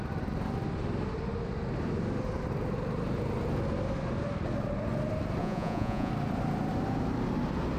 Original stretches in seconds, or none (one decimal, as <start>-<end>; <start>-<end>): 0.0-5.4; 6.1-7.8